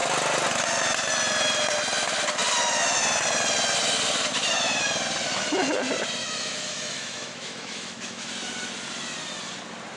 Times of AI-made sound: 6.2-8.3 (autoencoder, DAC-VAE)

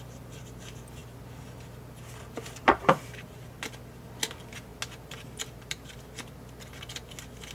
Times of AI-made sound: none